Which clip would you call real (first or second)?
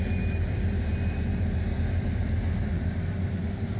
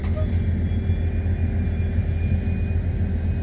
second